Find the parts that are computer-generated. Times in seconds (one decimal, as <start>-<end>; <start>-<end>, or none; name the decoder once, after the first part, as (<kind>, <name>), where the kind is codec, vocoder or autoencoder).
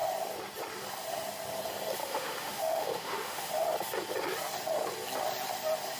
2.0-3.5 (autoencoder, DAC-VAE)